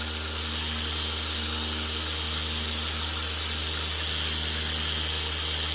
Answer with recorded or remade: recorded